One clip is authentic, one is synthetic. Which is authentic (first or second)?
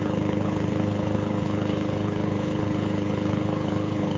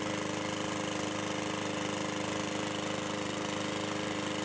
second